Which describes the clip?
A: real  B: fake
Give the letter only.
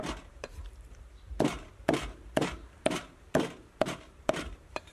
B